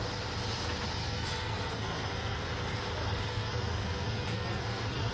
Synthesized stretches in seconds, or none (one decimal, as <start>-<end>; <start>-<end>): 1.0-2.5; 3.0-5.1